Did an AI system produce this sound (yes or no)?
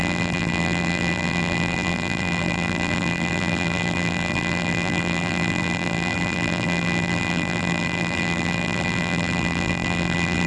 yes